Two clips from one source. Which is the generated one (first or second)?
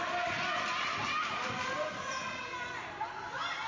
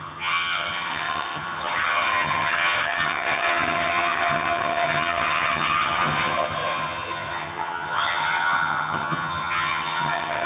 second